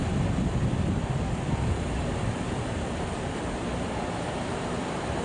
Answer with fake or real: real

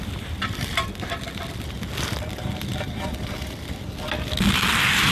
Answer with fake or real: real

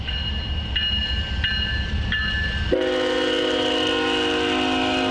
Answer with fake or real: real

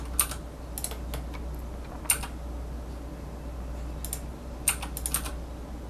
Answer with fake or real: real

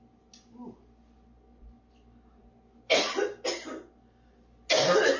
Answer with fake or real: real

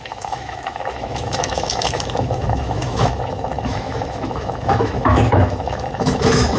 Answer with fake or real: fake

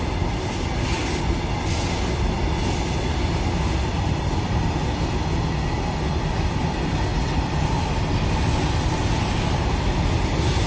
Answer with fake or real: real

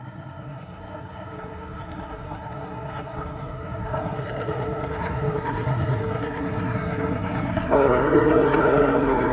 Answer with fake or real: fake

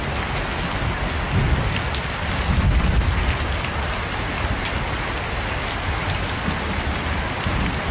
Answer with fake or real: real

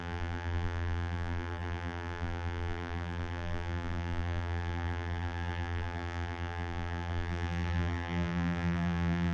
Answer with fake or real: fake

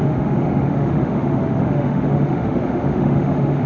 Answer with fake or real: fake